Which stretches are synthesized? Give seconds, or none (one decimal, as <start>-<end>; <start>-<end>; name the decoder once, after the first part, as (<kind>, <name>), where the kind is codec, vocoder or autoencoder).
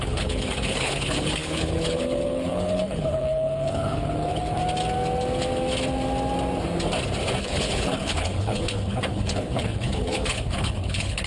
0.0-4.6 (codec, HILCodec); 7.4-11.3